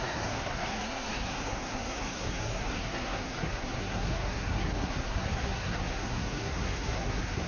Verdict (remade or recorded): remade